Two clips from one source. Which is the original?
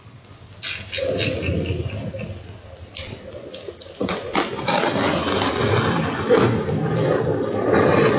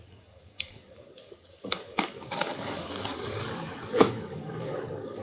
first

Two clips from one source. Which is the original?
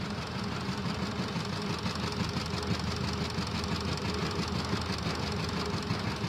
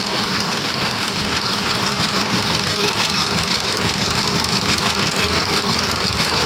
first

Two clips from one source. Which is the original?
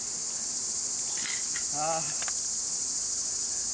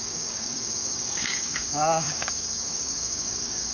first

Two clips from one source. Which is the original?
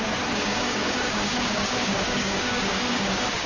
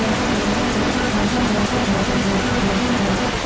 second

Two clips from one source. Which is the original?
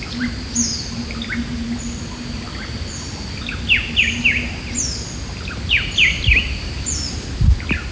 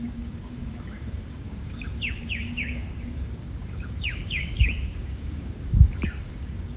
first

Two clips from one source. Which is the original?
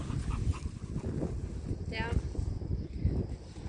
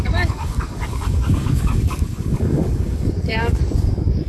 first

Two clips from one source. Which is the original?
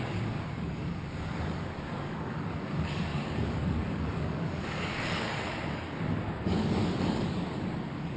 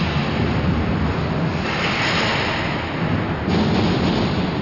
second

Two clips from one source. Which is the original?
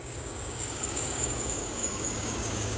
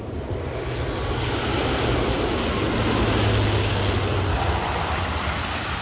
second